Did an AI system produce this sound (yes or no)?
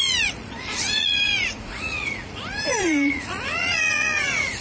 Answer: yes